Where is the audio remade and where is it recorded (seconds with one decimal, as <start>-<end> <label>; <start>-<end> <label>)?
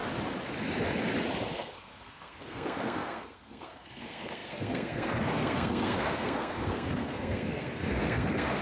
0.0-1.5 recorded; 1.5-8.6 remade